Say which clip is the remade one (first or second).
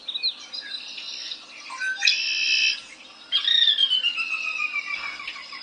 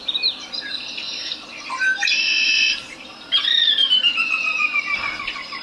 second